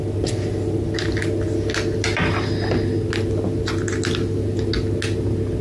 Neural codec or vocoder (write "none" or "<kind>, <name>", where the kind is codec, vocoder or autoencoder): none